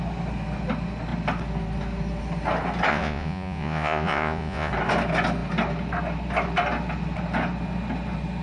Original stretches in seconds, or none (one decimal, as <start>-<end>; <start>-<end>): 0.0-2.9; 4.7-8.4